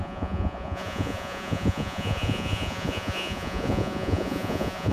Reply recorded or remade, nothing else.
remade